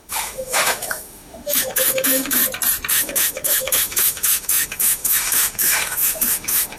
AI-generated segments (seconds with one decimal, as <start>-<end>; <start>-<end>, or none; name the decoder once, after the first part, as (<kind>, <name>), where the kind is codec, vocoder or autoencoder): 0.0-2.4 (autoencoder, DAC-VAE); 2.9-6.8